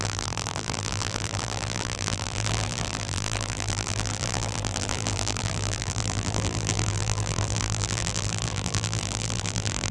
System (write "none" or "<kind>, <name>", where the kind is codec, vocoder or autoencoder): vocoder, BigVGAN v2